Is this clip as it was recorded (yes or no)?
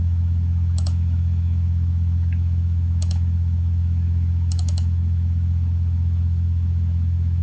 no